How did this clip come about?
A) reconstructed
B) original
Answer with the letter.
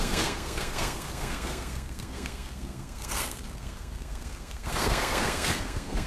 A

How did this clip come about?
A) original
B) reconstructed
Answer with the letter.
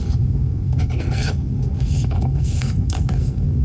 B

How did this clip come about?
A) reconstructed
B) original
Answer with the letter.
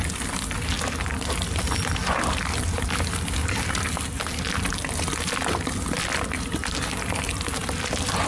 B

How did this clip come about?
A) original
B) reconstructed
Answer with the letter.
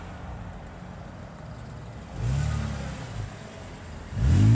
A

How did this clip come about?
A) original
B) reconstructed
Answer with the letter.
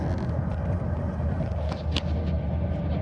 A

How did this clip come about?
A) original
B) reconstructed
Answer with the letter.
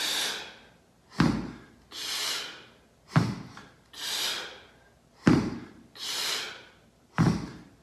A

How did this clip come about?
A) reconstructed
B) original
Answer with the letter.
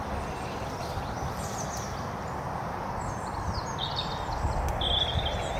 B